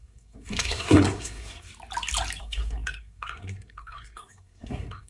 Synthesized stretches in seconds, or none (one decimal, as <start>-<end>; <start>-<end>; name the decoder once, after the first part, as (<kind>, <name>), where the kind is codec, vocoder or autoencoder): 0.0-1.7 (codec, SNAC); 2.4-5.1